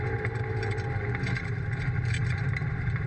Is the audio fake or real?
fake